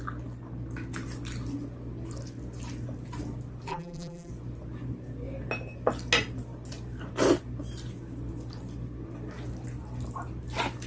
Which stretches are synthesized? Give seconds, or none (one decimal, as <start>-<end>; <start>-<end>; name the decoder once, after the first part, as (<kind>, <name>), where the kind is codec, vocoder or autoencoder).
3.7-4.3 (vocoder, BigVGAN v2)